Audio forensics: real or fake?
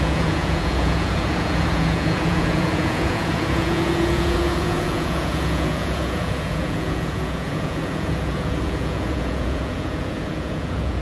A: fake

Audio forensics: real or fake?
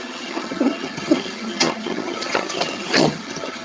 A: fake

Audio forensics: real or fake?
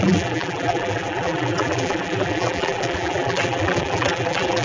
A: fake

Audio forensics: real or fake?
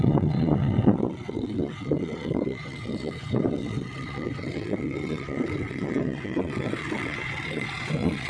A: fake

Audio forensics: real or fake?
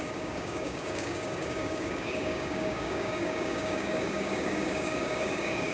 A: fake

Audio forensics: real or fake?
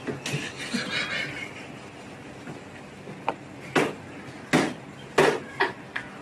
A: real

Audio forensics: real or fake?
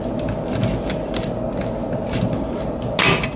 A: real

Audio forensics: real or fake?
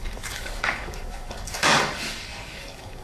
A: fake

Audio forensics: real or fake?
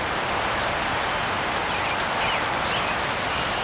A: real